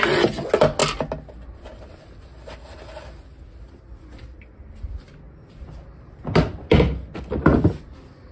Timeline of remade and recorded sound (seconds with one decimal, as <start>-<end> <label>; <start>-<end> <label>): 0.0-8.3 recorded